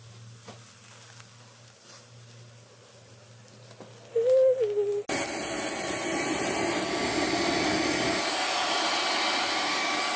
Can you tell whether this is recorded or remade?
recorded